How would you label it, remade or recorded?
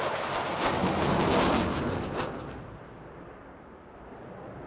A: recorded